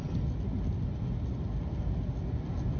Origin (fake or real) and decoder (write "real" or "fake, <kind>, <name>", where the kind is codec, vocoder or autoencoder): real